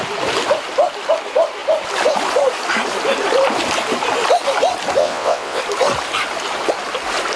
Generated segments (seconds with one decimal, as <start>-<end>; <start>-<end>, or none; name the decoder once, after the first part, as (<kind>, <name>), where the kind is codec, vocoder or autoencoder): 5.0-5.6 (vocoder, WaveNeXt)